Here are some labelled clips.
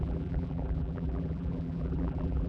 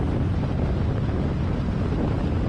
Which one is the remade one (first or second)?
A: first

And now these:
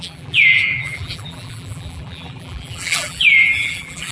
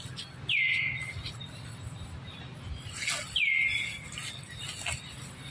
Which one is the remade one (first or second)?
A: first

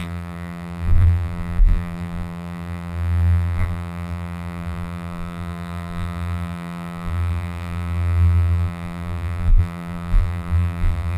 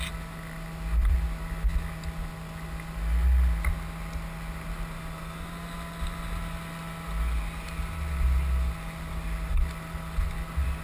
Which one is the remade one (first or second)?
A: first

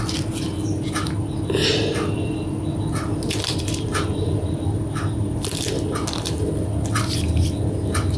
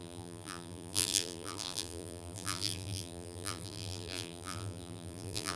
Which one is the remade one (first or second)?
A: second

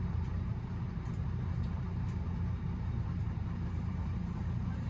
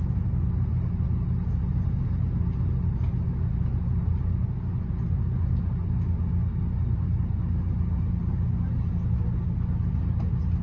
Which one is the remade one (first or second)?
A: first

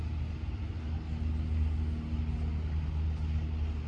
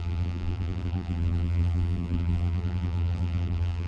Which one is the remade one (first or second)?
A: second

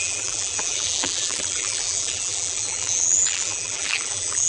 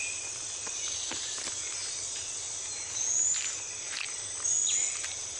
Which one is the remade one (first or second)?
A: first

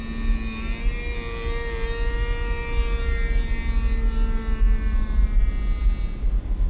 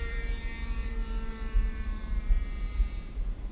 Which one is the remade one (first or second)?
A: second